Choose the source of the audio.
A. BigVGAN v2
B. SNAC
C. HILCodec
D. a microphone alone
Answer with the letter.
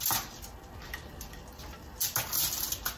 D